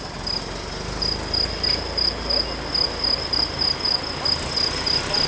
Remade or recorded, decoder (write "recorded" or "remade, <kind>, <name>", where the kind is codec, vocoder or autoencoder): recorded